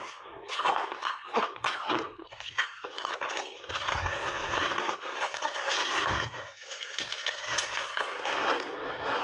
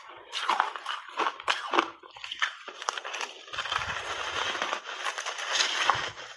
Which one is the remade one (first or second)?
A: first